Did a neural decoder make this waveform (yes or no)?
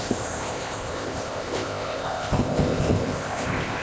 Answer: yes